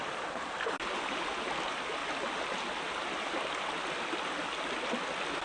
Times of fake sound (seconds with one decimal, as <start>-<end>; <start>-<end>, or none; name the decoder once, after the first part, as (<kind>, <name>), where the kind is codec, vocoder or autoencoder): none